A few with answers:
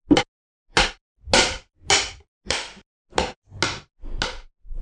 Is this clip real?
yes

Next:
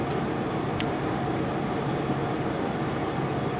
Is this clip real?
no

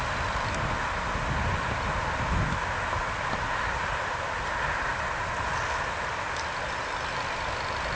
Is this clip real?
yes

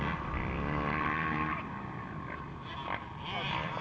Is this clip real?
yes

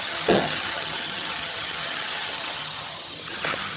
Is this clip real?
no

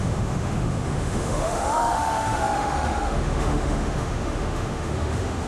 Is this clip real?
no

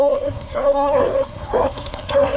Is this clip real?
no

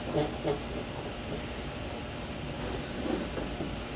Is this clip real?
yes